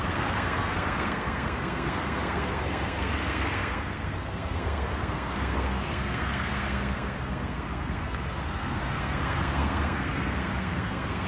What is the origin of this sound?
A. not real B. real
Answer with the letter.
A